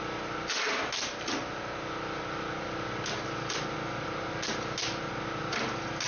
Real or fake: real